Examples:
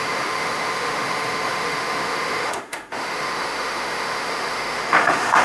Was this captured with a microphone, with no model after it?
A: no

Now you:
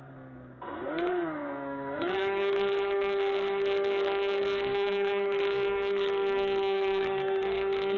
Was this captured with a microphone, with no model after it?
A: no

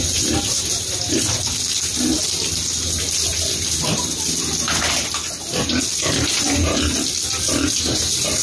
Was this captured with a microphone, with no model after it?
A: yes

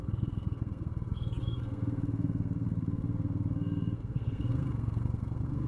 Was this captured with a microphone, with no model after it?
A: no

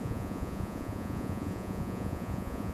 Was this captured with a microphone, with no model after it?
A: no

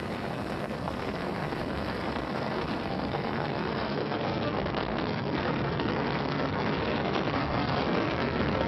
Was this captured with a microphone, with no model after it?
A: no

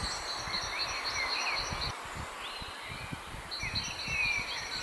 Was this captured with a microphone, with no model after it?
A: yes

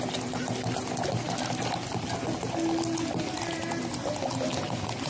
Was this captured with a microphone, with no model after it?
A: yes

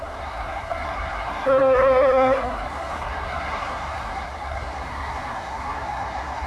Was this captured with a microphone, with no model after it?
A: no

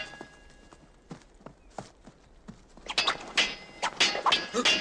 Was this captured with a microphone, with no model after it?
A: yes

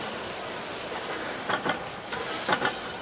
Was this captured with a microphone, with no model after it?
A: no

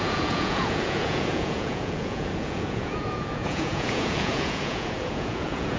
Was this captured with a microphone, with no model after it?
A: no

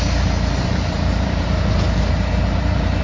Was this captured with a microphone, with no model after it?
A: no